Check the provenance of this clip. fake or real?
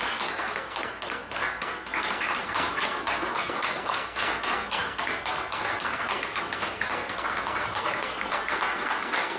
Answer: fake